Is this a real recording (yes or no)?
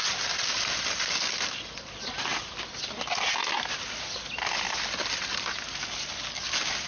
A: yes